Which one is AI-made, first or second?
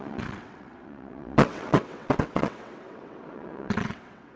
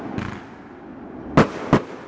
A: first